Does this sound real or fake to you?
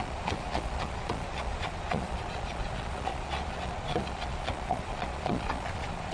fake